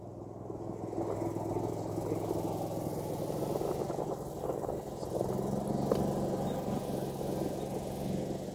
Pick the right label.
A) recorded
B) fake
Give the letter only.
A